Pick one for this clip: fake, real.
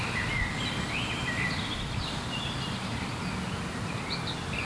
real